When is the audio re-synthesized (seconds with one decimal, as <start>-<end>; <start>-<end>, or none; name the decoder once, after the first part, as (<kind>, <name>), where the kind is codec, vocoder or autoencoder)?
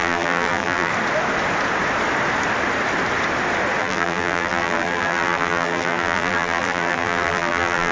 0.0-0.9 (vocoder, BigVGAN v2); 3.8-7.9